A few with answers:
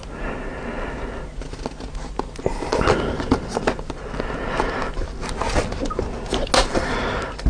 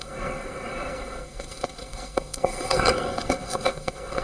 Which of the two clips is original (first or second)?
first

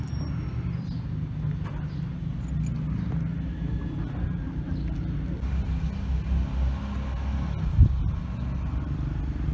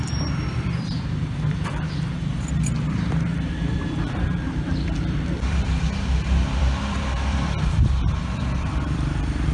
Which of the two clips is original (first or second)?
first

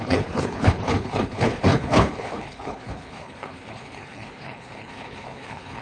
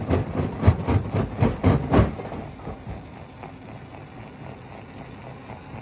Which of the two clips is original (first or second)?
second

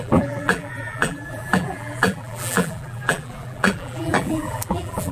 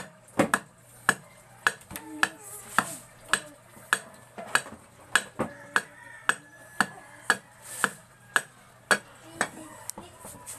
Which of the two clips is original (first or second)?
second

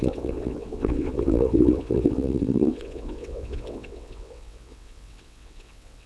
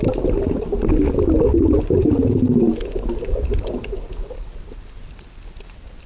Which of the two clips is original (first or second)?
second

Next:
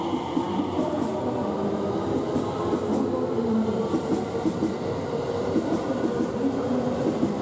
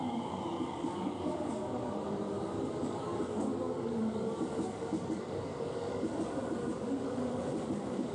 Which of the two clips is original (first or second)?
first